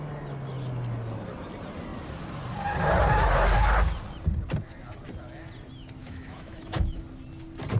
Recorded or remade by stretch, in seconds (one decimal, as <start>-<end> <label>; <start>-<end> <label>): 0.0-6.0 recorded; 6.0-7.0 remade; 7.0-7.8 recorded